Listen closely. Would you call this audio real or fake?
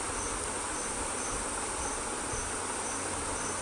real